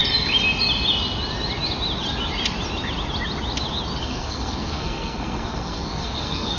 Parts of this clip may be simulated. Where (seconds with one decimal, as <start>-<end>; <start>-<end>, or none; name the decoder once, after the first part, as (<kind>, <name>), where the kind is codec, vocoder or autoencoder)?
4.0-6.6 (codec, SNAC)

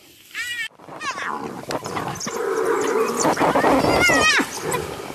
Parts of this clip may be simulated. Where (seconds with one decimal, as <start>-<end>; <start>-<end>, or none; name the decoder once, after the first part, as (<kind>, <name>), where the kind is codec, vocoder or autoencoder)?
none

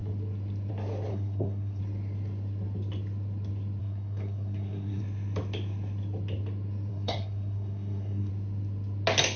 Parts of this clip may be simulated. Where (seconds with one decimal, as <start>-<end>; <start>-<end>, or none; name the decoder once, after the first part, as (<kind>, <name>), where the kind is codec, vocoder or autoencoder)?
1.1-1.8 (codec, SNAC); 3.8-5.0; 6.9-8.3

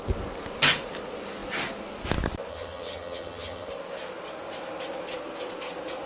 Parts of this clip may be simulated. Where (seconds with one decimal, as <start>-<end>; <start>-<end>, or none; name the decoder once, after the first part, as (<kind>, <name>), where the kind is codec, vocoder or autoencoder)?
2.5-3.7 (vocoder, HiFi-GAN)

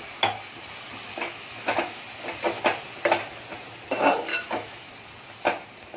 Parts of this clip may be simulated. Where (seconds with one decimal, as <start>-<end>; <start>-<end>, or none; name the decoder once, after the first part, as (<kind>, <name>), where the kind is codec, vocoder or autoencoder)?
1.1-2.0 (autoencoder, DAC-VAE); 4.3-4.9

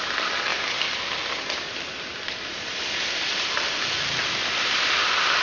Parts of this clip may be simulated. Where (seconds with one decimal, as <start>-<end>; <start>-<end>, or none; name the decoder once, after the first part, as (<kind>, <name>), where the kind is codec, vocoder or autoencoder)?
none

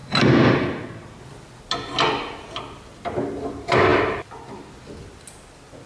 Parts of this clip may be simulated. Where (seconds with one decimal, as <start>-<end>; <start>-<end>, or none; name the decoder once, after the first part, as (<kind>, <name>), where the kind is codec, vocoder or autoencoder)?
none

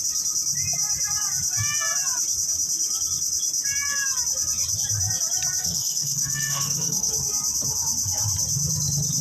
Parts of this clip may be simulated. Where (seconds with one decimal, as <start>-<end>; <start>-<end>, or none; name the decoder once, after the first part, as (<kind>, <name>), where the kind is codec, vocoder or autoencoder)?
5.6-7.1 (codec, SNAC)